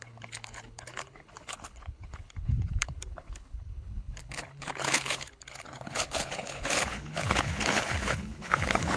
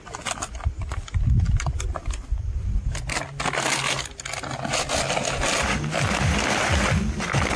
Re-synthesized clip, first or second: first